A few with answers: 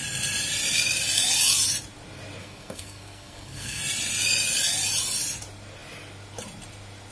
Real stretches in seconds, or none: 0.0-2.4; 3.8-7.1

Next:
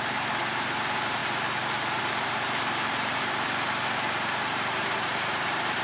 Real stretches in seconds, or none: none

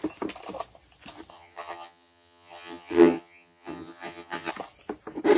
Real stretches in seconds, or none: 0.0-1.3; 4.5-5.4

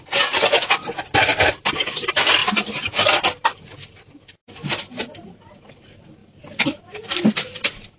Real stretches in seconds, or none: 0.0-0.8; 1.5-6.2

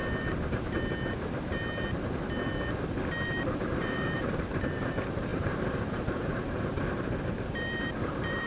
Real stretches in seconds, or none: 0.0-3.3

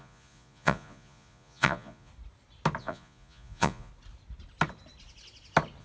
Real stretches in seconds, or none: 2.1-2.8; 3.9-5.8